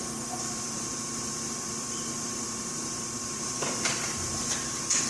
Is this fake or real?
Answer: fake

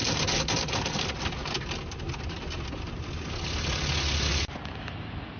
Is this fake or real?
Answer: real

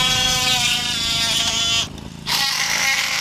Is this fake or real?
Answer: fake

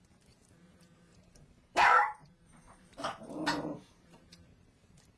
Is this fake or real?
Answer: fake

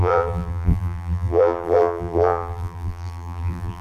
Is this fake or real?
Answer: fake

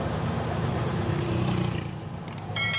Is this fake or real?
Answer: fake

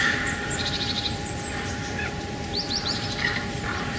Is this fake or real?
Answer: fake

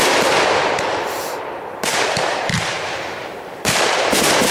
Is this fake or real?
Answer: fake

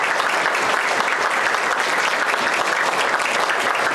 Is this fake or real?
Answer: real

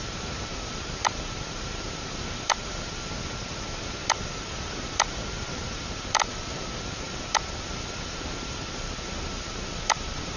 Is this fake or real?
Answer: fake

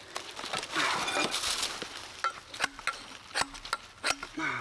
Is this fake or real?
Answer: real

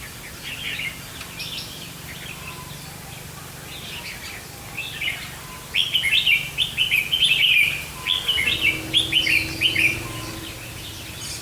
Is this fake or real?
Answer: real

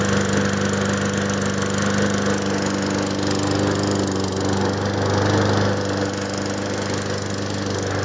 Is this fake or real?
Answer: real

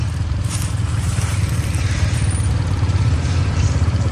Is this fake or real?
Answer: fake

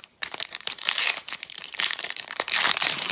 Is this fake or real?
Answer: fake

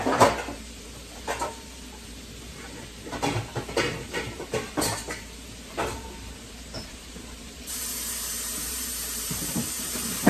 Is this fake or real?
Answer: fake